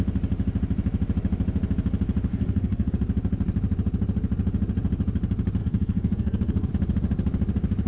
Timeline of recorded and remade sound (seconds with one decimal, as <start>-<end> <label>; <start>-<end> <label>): 0.0-2.3 recorded; 2.3-2.9 remade; 2.9-5.6 recorded; 5.6-6.7 remade; 6.7-7.9 recorded